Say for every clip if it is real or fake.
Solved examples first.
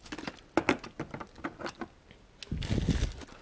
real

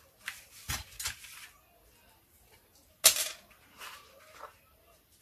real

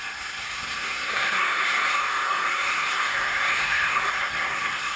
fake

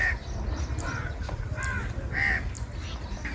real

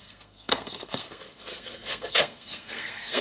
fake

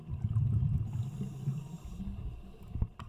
real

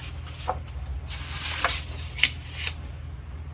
real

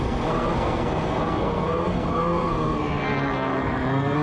fake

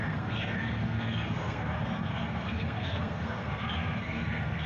fake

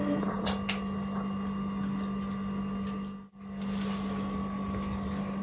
real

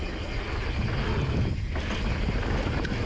real